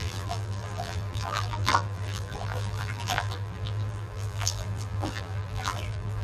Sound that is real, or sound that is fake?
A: fake